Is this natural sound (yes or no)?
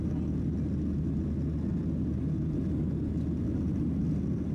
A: yes